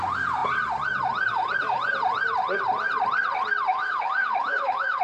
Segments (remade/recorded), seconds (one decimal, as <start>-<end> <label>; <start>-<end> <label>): 0.0-3.7 recorded; 3.7-5.0 remade

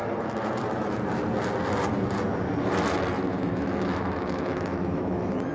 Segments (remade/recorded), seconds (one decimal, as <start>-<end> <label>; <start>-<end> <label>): 0.0-3.3 recorded; 3.3-5.5 remade